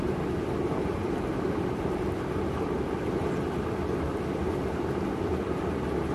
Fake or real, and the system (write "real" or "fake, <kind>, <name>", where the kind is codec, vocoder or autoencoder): real